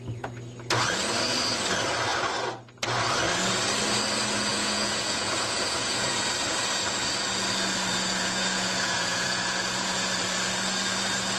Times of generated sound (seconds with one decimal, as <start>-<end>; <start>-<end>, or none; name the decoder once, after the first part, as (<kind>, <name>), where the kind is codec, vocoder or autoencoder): 4.5-6.3 (vocoder, Vocos); 7.9-10.1